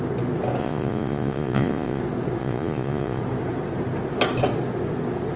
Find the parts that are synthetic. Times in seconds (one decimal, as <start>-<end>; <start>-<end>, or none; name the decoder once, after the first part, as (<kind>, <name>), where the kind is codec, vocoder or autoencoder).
0.6-2.0 (vocoder, Vocos); 2.4-3.2